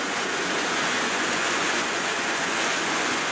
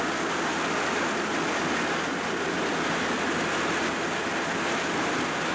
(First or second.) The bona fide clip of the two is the second